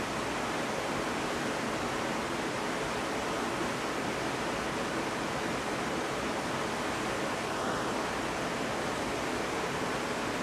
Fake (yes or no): no